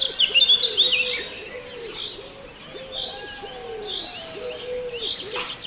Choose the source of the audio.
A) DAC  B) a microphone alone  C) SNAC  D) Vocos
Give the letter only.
B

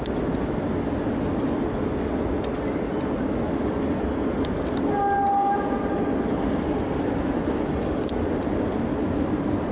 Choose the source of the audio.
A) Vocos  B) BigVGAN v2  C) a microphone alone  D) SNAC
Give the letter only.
C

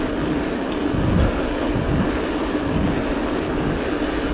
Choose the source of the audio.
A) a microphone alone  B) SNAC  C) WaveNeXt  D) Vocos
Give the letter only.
A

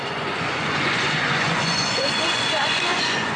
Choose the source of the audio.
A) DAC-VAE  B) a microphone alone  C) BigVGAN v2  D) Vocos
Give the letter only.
D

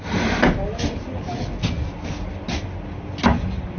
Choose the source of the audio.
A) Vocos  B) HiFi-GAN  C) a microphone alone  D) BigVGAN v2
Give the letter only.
C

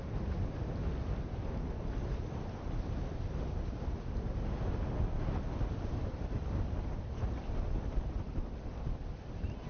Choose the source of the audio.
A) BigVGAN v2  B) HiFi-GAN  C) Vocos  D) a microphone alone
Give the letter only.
D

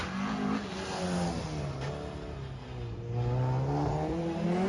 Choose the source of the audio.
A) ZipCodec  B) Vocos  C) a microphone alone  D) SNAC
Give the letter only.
C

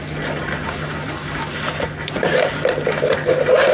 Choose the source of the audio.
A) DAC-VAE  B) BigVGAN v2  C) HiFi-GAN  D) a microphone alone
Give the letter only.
D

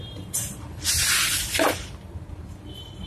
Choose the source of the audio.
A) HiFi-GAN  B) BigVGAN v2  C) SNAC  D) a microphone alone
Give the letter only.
D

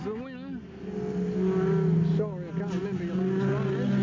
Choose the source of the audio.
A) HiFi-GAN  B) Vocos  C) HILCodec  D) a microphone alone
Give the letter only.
D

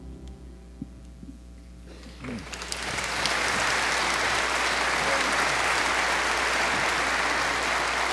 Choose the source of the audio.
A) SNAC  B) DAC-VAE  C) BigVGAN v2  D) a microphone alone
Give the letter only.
D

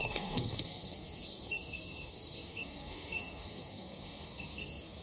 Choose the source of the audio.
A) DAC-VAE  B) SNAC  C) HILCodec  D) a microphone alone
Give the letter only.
B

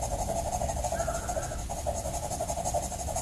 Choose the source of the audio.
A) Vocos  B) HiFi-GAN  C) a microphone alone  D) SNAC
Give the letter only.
C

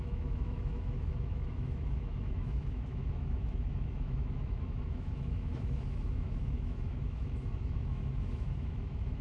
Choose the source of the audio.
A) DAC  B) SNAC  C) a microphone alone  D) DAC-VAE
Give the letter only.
D